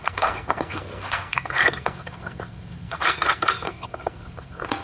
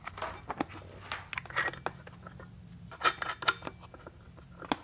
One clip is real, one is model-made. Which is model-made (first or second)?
first